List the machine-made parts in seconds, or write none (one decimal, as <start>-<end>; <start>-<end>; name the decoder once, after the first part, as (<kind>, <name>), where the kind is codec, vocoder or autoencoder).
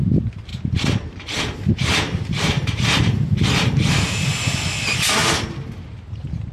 0.5-4.1 (vocoder, BigVGAN v2)